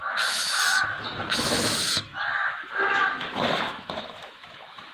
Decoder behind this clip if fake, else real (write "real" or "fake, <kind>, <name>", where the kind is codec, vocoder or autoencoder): fake, autoencoder, DAC-VAE